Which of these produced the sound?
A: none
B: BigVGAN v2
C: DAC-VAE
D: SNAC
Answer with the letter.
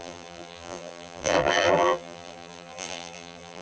B